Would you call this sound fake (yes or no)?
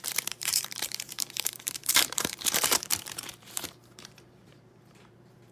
yes